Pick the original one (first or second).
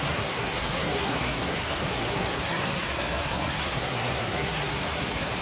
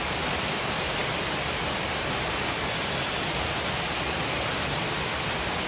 second